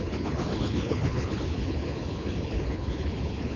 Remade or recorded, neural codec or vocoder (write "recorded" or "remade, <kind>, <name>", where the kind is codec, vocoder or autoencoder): remade, codec, HILCodec